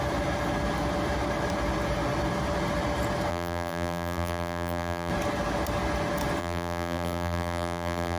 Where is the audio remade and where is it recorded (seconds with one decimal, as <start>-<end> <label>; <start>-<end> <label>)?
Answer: 0.0-3.3 recorded; 3.3-5.1 remade; 5.1-6.4 recorded; 6.4-8.2 remade